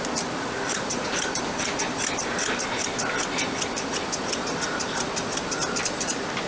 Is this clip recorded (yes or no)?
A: yes